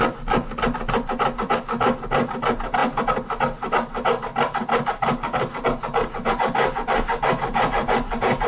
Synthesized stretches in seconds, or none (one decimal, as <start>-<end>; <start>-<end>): none